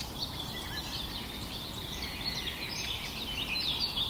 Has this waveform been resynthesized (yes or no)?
no